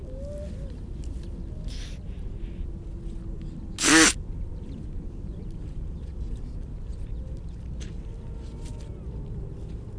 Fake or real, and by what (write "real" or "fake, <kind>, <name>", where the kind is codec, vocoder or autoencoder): real